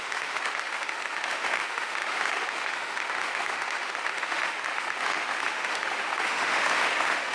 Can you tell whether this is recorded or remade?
remade